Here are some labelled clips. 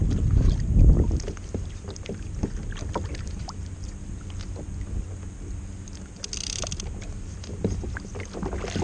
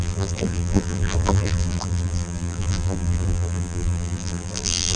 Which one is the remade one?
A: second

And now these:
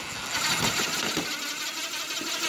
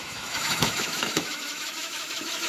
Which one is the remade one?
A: second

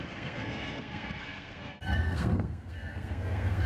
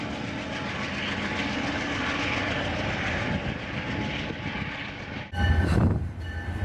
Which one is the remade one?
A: first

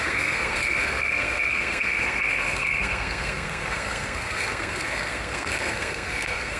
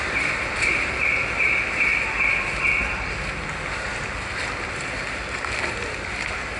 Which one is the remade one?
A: first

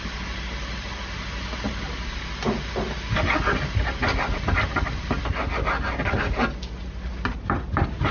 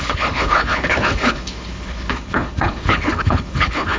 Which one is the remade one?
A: second